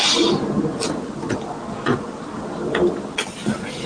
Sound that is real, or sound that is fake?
real